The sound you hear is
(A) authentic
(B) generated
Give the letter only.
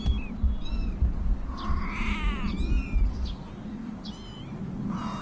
A